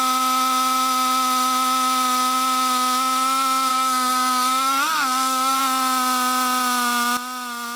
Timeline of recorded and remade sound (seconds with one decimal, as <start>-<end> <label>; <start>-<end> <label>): 0.0-3.7 recorded; 3.7-5.6 remade; 5.6-7.8 recorded